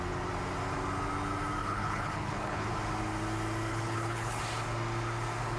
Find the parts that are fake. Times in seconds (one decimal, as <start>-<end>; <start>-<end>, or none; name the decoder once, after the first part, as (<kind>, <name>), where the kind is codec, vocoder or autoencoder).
1.6-2.7 (codec, HILCodec); 3.7-4.4